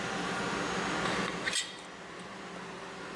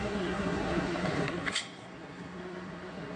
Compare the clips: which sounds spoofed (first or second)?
second